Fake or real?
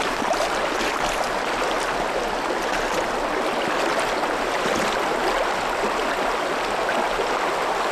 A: real